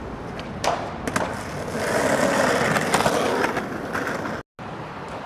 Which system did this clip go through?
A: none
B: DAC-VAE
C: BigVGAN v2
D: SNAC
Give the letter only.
A